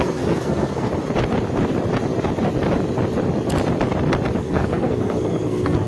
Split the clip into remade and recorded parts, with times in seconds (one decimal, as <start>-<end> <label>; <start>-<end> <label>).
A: 0.0-0.9 remade; 0.9-4.4 recorded; 4.4-5.9 remade